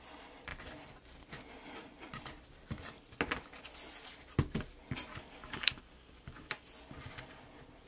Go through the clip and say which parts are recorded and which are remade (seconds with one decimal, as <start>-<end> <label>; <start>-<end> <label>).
0.0-5.1 recorded; 5.1-6.5 remade; 6.5-7.9 recorded

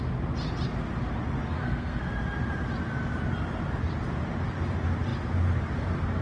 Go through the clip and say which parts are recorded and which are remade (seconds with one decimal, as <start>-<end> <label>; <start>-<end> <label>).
0.0-1.6 recorded; 1.6-2.1 remade; 2.1-6.2 recorded

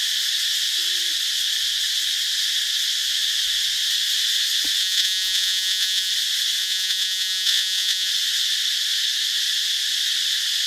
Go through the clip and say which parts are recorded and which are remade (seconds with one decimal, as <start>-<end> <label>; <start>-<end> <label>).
0.0-4.8 recorded; 4.8-6.1 remade; 6.1-6.6 recorded; 6.6-8.1 remade; 8.1-10.7 recorded

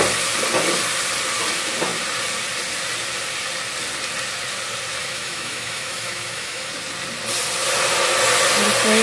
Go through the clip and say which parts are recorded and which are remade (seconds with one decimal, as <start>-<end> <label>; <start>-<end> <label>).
0.0-5.0 recorded; 5.0-6.7 remade; 6.7-9.0 recorded

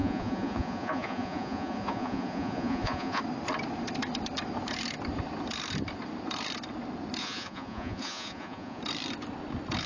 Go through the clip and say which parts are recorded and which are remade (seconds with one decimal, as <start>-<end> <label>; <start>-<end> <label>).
0.0-3.2 remade; 3.2-7.2 recorded; 7.2-8.8 remade; 8.8-9.9 recorded

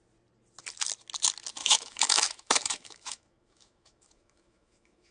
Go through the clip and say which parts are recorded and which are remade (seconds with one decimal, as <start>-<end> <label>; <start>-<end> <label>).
0.0-1.6 recorded; 1.6-5.1 remade